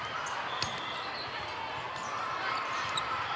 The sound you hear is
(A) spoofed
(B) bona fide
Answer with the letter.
B